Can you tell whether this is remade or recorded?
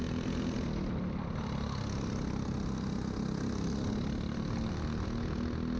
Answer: recorded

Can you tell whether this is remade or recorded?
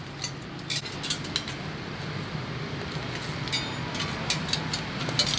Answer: recorded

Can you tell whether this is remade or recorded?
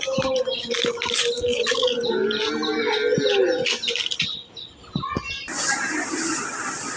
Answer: recorded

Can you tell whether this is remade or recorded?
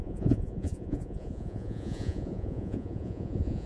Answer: remade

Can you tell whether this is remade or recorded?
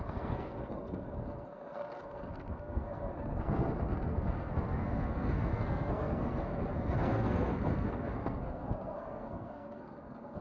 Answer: remade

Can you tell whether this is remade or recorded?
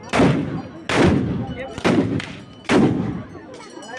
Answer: recorded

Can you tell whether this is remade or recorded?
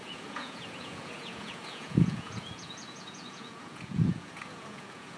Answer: remade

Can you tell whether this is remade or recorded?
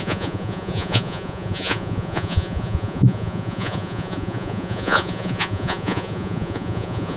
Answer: remade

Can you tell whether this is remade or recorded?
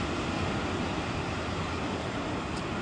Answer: recorded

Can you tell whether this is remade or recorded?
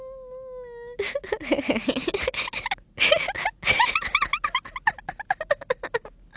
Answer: recorded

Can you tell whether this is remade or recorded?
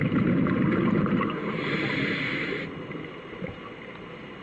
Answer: recorded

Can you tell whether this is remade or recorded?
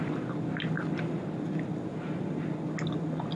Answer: recorded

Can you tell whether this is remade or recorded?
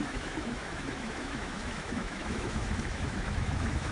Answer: remade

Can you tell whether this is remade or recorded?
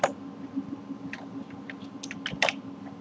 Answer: recorded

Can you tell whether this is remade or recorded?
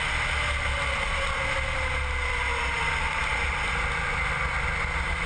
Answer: recorded